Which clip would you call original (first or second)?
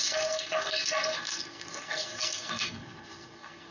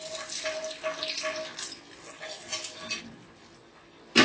second